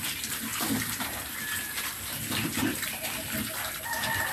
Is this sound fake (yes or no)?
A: no